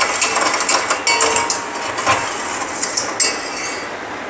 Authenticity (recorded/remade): recorded